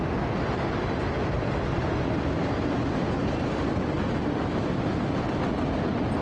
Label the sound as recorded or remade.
recorded